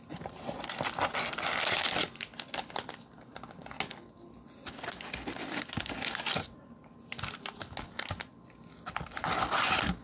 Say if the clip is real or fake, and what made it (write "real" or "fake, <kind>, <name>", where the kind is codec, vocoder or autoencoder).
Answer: real